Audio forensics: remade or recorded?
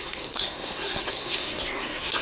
remade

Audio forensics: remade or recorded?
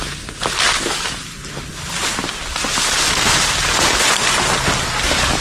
recorded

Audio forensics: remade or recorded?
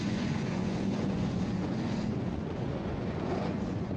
remade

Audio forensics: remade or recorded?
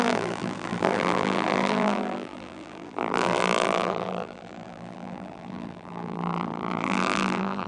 remade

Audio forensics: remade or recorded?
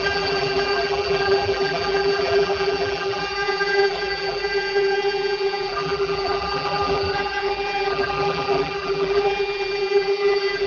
remade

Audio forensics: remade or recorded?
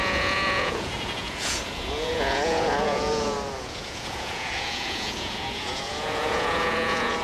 remade